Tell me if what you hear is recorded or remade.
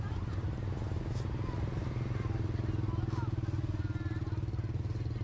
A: recorded